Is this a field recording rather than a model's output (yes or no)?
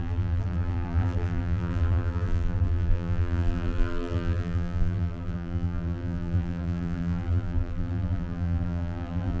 no